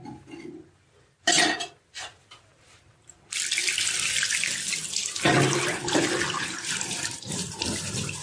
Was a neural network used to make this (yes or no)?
no